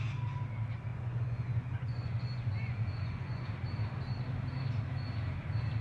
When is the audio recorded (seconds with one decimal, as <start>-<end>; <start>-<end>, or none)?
0.0-0.9; 3.5-5.8